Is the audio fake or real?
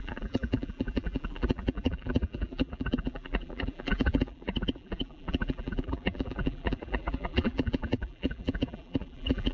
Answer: fake